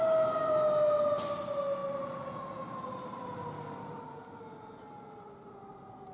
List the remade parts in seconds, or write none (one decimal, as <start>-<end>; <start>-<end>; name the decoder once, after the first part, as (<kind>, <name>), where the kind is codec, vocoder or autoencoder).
none